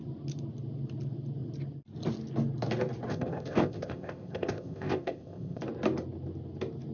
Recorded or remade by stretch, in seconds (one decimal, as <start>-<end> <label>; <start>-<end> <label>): 0.0-3.1 recorded; 3.1-5.6 remade; 5.6-6.9 recorded